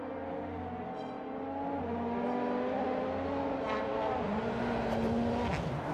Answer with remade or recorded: recorded